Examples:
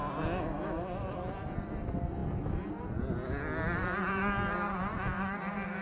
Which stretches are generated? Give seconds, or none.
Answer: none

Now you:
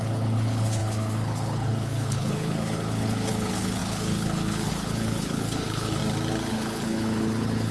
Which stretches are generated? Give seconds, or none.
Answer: 0.0-6.0 (codec, HILCodec); 6.5-7.7

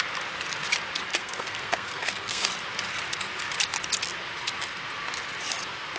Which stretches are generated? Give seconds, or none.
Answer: 1.1-2.5 (codec, SNAC)

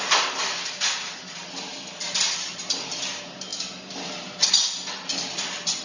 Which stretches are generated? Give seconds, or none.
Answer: none

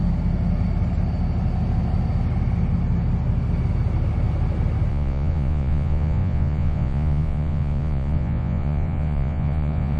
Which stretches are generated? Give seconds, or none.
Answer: 4.9-10.0 (vocoder, Vocos)